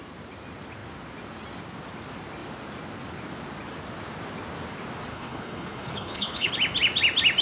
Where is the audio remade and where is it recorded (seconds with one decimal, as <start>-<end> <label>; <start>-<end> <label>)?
0.0-5.1 recorded; 5.1-6.5 remade; 6.5-7.4 recorded